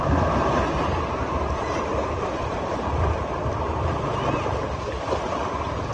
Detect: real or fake real